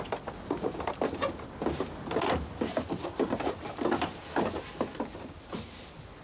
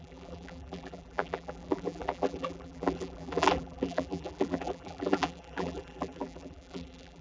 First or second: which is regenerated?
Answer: second